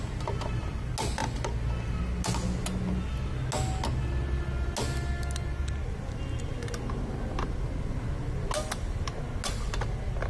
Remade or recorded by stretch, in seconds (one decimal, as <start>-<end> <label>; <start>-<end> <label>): 0.0-10.3 recorded